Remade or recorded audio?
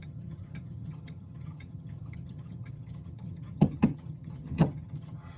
remade